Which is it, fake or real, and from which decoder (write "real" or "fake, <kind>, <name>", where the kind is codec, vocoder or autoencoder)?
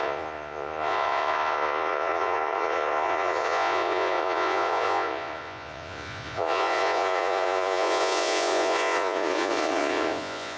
fake, vocoder, Vocos